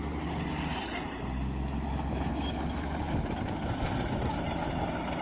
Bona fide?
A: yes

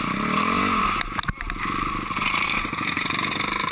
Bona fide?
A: yes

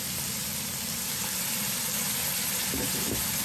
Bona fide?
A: yes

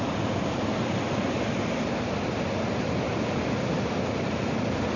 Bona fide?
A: yes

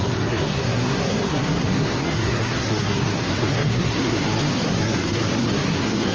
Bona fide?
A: no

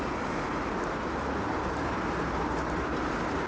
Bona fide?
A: yes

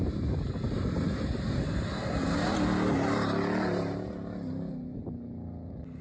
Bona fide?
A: yes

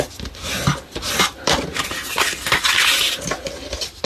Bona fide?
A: yes